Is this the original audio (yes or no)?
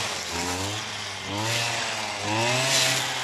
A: yes